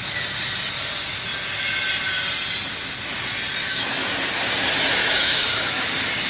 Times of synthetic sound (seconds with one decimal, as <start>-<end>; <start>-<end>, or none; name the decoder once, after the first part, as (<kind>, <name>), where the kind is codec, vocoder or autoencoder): 3.6-4.1 (autoencoder, DAC-VAE); 5.0-5.8